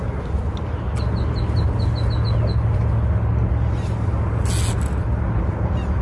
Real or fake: real